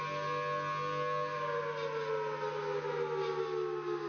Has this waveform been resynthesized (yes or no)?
no